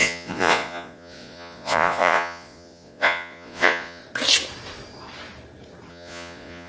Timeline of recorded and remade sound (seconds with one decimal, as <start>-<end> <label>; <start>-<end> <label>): 0.0-4.0 remade; 4.0-5.9 recorded; 5.9-6.7 remade